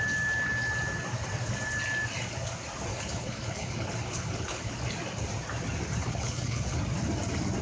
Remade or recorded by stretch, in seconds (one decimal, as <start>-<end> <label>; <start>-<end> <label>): 0.0-2.9 recorded; 2.9-4.7 remade; 4.7-6.0 recorded; 6.0-6.8 remade; 6.8-7.6 recorded